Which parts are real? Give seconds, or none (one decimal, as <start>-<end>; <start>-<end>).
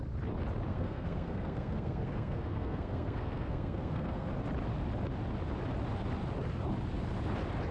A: 0.0-0.7; 4.3-7.7